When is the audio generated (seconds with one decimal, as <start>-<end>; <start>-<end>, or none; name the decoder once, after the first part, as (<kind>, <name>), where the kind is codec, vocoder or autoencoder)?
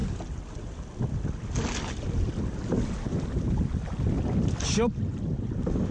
none